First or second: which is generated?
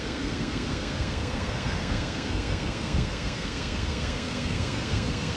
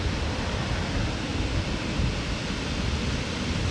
first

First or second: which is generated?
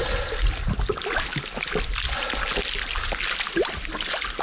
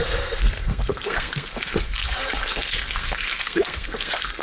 second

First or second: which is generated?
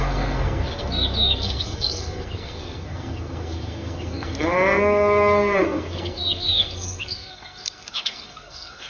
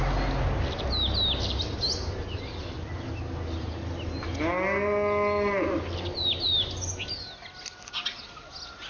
first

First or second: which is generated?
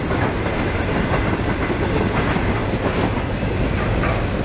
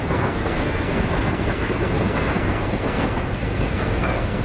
second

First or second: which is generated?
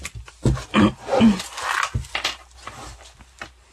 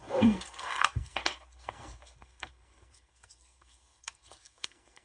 second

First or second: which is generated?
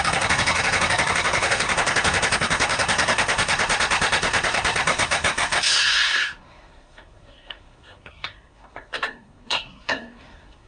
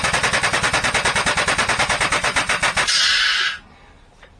first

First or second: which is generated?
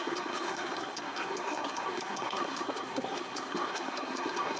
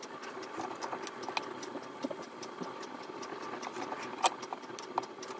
first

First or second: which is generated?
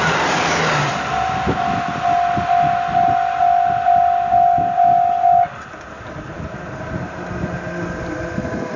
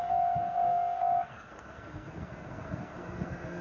second